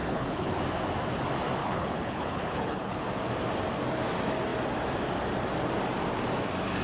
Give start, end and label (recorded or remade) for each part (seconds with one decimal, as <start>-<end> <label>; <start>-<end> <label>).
0.0-0.6 remade; 0.6-1.6 recorded; 1.6-3.0 remade; 3.0-6.8 recorded